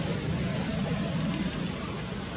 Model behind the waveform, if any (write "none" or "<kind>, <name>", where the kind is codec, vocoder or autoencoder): none